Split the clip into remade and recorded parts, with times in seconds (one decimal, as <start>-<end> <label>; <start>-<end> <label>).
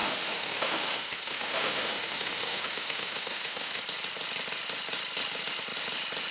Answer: 0.0-3.8 remade; 3.8-6.3 recorded